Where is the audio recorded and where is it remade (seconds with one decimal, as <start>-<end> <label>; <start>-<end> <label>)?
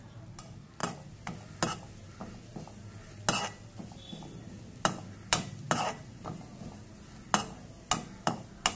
0.0-8.8 recorded